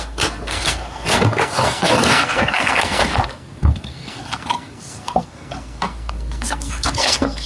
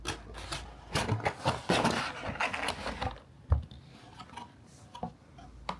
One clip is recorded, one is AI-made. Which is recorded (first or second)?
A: second